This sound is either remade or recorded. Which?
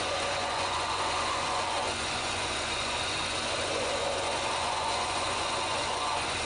remade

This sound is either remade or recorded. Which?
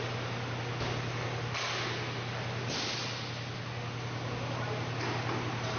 recorded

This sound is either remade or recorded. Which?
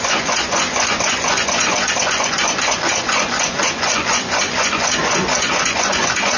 remade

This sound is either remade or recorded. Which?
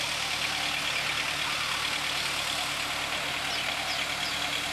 recorded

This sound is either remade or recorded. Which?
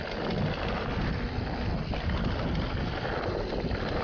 recorded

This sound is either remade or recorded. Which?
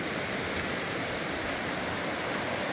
recorded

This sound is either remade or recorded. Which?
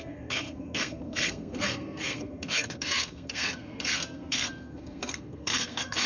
remade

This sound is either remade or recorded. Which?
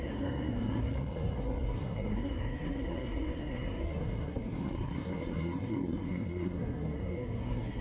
remade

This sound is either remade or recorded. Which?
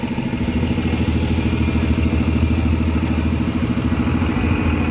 recorded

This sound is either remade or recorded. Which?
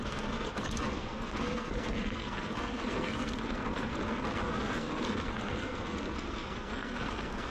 remade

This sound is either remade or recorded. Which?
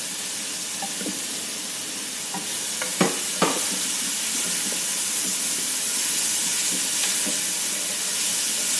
recorded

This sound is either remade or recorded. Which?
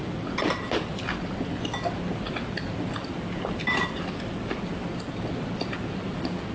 recorded